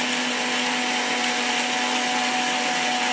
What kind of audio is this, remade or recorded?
recorded